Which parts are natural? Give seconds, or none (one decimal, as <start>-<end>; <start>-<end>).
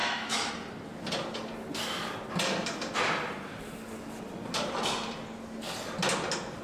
0.5-6.6